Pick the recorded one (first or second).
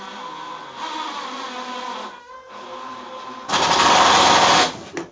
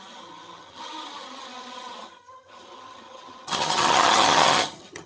first